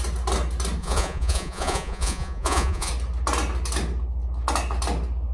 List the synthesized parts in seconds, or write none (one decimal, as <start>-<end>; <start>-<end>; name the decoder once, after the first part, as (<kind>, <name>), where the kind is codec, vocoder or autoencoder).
0.8-2.9 (vocoder, Vocos)

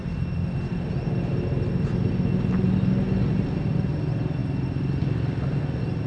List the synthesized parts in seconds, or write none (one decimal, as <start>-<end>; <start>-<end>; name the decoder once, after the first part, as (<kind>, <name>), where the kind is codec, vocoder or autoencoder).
none

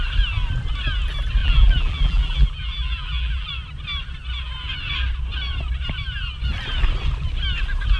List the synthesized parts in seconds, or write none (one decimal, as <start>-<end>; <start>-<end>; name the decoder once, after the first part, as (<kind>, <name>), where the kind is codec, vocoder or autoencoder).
1.4-3.5 (vocoder, BigVGAN v2)

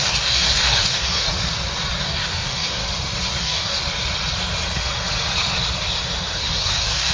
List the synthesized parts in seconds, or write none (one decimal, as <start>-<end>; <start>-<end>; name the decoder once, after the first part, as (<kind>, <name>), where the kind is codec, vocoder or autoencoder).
0.0-1.3 (codec, DAC); 2.0-2.8; 3.4-3.8; 6.4-7.1

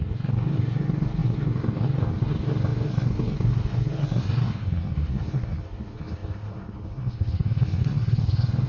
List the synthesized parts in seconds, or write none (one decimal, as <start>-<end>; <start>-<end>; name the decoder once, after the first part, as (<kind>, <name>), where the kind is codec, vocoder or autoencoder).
0.0-8.7 (codec, SNAC)

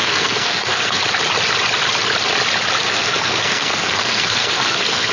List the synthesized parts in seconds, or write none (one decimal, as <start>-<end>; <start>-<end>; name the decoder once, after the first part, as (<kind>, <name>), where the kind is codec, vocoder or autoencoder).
0.0-1.0 (codec, SNAC); 2.8-5.1

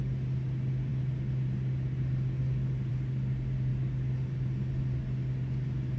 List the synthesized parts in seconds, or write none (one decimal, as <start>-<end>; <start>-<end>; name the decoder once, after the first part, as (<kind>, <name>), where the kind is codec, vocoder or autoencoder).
none